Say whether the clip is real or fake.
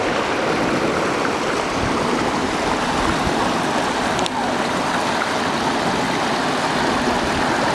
real